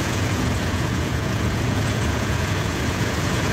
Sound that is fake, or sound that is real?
fake